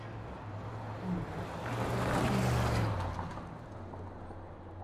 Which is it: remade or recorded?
recorded